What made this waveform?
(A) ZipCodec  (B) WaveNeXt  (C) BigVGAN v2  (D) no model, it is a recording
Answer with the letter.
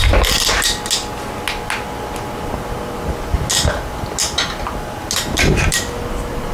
D